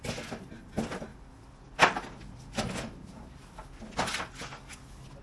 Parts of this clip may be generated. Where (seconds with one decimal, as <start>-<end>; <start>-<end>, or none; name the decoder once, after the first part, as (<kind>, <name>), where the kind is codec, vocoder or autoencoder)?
none